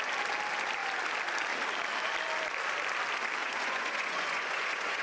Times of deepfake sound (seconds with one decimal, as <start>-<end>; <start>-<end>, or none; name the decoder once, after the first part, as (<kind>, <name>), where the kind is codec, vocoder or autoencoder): 3.4-5.0 (vocoder, Vocos)